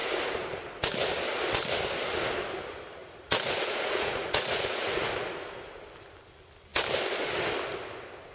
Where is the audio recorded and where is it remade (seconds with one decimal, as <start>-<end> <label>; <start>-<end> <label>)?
0.0-3.0 recorded; 3.0-5.1 remade; 5.1-8.3 recorded